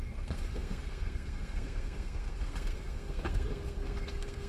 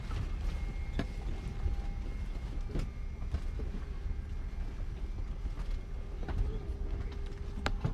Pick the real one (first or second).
second